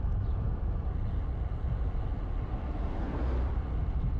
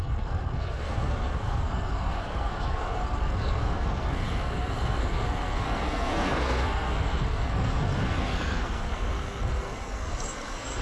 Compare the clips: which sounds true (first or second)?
first